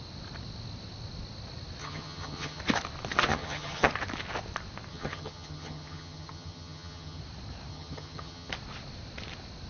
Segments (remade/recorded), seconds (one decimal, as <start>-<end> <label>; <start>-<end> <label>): 0.0-1.8 recorded; 1.8-2.6 remade; 2.6-3.3 recorded; 3.3-3.9 remade; 3.9-4.9 recorded; 4.9-7.2 remade; 7.2-7.7 recorded; 7.7-8.5 remade; 8.5-9.7 recorded